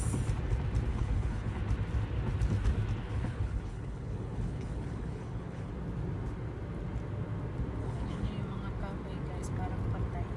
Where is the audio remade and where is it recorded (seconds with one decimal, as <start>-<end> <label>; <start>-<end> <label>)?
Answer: 0.0-0.9 recorded; 0.9-1.6 remade; 1.6-3.1 recorded; 3.1-5.7 remade; 5.7-7.8 recorded; 7.8-8.3 remade; 8.3-10.4 recorded